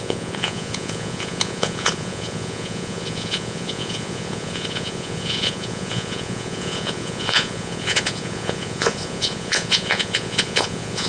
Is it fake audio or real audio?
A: fake